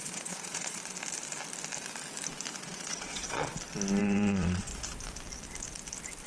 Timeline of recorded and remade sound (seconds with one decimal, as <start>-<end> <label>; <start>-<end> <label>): 0.0-0.8 remade; 0.8-2.6 recorded; 2.6-3.5 remade; 3.5-4.0 recorded; 4.0-4.7 remade; 4.7-6.3 recorded